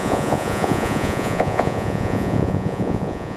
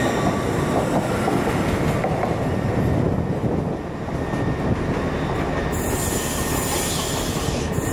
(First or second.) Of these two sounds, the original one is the second